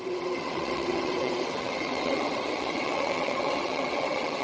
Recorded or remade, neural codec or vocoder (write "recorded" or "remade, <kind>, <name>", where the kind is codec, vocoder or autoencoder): remade, vocoder, WaveNeXt